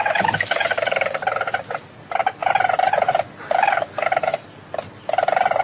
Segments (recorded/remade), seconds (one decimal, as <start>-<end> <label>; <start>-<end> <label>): 0.0-5.6 recorded